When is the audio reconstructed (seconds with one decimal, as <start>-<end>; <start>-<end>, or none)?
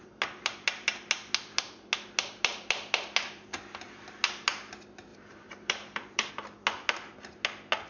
5.1-6.3